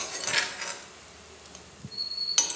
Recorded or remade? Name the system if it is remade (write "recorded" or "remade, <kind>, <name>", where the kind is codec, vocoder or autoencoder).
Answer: recorded